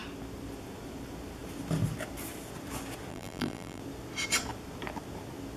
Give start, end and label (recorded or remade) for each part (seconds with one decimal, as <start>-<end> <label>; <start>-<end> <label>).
0.0-3.1 recorded; 3.1-3.8 remade; 3.8-5.6 recorded